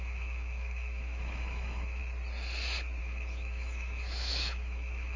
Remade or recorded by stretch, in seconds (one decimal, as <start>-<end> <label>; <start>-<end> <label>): 0.0-2.0 remade; 2.0-3.0 recorded; 3.0-5.2 remade